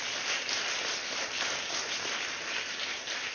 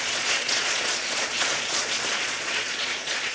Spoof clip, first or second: second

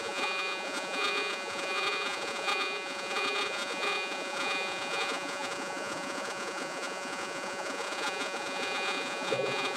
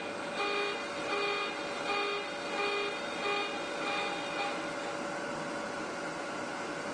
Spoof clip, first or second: first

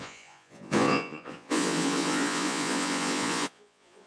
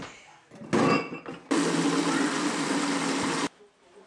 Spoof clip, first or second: first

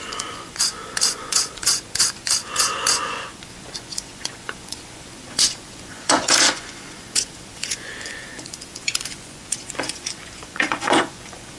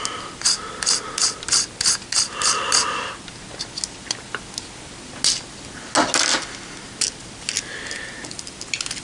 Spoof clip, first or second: first